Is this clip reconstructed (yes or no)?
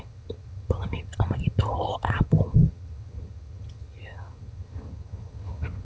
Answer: yes